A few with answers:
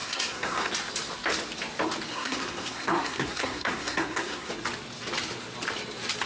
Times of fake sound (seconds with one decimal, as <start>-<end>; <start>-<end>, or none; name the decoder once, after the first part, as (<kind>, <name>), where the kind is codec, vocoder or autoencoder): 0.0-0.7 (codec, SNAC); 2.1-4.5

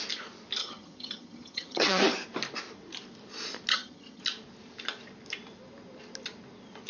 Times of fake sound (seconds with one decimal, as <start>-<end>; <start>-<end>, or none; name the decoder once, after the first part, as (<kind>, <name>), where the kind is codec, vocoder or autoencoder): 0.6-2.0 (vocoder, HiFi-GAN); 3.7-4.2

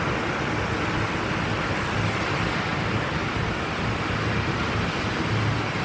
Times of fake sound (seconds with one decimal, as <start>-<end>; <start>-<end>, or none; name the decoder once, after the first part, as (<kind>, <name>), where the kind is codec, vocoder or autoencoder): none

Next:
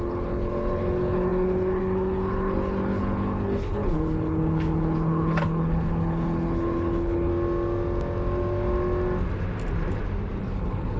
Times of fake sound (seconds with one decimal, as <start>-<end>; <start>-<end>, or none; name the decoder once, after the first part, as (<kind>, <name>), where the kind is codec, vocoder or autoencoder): 0.0-7.3 (codec, HILCodec); 10.4-11.0

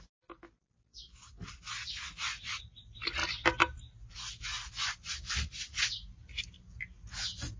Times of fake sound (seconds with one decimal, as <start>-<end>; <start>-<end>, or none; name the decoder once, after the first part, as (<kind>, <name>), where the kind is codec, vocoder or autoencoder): none

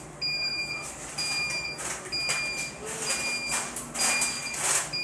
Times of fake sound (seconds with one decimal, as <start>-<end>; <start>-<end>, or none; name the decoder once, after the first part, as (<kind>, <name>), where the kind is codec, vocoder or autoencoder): none

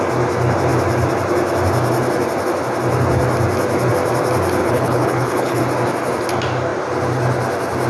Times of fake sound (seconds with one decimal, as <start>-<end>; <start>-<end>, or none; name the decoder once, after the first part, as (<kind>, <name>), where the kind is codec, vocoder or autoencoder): 4.6-5.6 (codec, HILCodec)

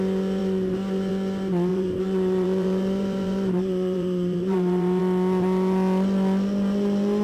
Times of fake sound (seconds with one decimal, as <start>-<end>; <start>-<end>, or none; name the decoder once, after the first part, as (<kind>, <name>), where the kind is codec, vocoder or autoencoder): 1.7-5.0 (vocoder, BigVGAN v2)